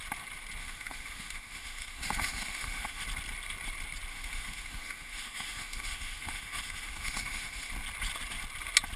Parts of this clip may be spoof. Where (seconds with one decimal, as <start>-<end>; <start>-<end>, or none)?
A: 0.6-3.0; 4.1-7.7